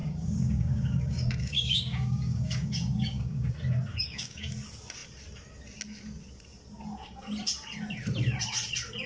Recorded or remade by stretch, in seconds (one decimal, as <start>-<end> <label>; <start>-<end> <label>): 0.0-3.5 remade; 3.5-3.9 recorded; 3.9-4.5 remade; 4.5-9.1 recorded